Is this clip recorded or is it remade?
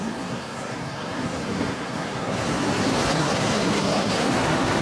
remade